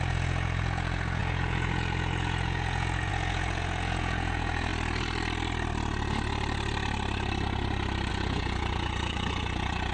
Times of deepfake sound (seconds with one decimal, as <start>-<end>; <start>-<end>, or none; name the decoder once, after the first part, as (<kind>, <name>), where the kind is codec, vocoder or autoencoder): 0.0-4.7 (vocoder, Vocos); 8.1-9.9